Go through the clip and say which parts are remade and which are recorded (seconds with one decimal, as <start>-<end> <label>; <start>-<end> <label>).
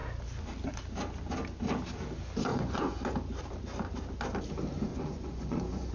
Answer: 0.0-2.5 recorded; 2.5-3.1 remade; 3.1-4.9 recorded; 4.9-5.9 remade